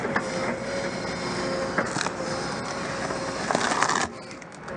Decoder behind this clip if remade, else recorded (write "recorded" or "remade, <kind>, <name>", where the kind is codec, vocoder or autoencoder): recorded